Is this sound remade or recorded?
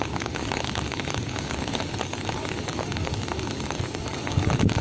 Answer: remade